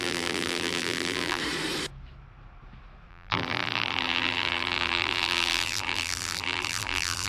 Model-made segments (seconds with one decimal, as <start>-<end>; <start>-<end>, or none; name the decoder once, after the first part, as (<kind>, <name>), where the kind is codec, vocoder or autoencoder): 0.0-1.4 (vocoder, BigVGAN v2); 3.1-7.3